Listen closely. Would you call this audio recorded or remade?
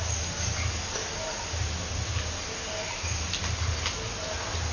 recorded